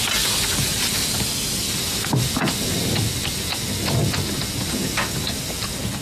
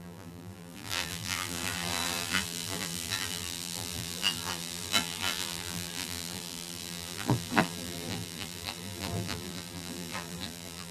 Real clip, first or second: first